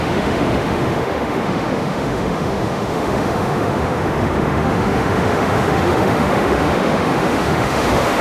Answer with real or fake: fake